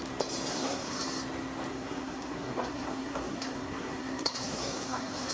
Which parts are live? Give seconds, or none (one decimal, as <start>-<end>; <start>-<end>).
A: 0.0-0.5; 1.0-1.7